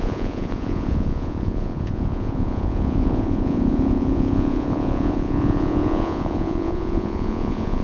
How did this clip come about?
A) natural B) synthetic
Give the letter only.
B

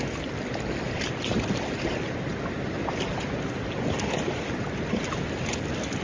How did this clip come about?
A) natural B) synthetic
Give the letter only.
A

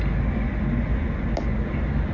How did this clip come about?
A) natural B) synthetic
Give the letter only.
A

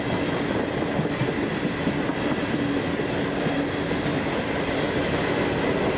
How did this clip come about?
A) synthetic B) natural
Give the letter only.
B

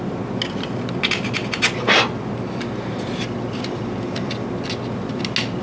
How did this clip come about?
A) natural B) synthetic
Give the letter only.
A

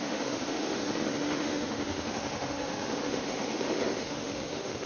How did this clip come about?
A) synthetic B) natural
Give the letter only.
A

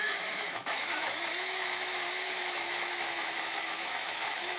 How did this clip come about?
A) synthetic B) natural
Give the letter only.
A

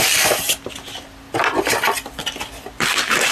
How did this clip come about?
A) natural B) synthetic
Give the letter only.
A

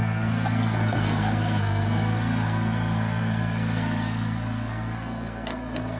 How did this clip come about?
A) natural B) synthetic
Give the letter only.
B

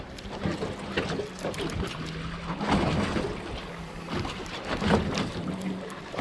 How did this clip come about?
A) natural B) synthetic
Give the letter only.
A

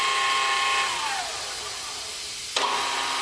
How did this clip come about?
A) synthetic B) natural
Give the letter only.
B